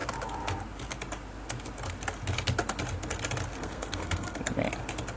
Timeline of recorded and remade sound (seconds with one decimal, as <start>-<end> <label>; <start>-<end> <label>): 0.0-3.6 recorded; 3.6-4.4 remade; 4.4-5.2 recorded